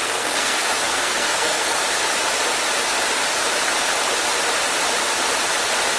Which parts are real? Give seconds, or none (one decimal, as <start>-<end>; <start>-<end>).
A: 1.8-6.0